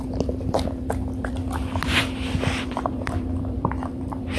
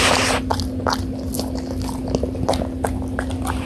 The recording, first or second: second